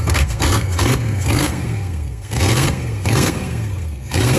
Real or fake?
fake